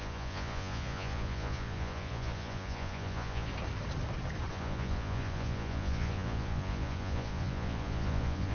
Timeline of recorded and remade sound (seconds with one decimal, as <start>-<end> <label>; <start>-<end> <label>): 0.0-3.5 remade; 3.5-4.5 recorded; 4.5-8.5 remade